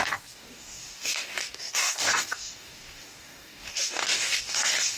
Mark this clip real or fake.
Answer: fake